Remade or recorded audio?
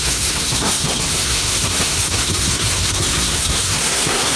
remade